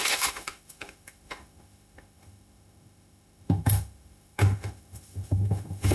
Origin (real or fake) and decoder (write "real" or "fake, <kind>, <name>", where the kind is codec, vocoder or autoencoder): fake, autoencoder, DAC-VAE